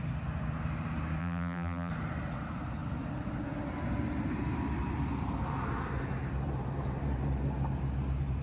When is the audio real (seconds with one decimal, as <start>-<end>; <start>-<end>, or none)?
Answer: 0.0-1.2; 1.9-8.4